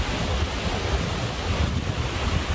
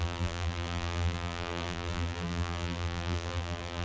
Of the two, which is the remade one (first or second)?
second